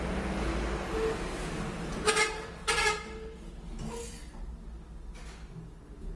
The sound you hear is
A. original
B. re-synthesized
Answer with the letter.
A